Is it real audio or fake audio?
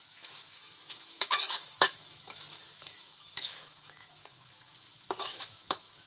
fake